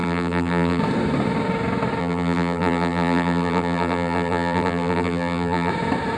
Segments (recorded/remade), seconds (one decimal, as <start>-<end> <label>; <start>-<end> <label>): 0.0-0.8 remade; 0.8-2.0 recorded; 2.0-5.7 remade; 5.7-6.2 recorded